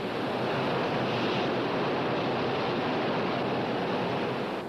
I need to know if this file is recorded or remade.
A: recorded